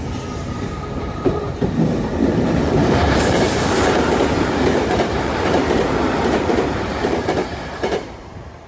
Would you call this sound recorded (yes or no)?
no